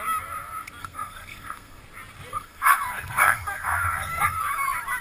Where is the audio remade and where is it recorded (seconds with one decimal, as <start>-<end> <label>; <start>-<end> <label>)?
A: 0.0-0.8 recorded; 0.8-1.8 remade; 1.8-2.3 recorded; 2.3-4.4 remade; 4.4-5.0 recorded